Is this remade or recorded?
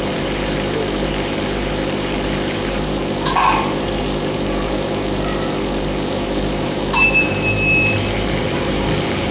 remade